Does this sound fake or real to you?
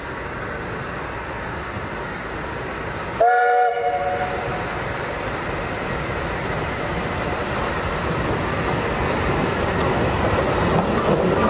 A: real